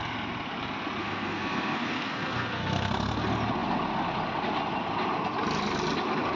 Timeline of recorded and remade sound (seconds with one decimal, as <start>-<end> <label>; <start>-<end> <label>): 0.0-1.0 recorded; 1.0-3.2 remade; 3.2-6.4 recorded